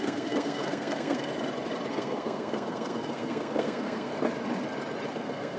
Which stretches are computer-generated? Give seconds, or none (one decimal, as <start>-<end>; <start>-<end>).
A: 0.0-1.3; 1.9-4.1; 5.1-5.6